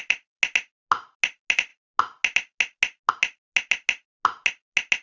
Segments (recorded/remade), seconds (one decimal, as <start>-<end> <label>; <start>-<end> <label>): 0.0-5.0 recorded